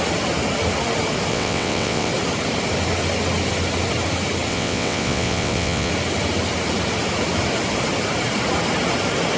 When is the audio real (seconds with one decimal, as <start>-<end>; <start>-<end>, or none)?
0.0-1.3; 2.1-4.5; 5.9-9.4